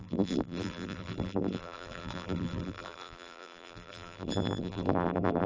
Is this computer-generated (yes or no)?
yes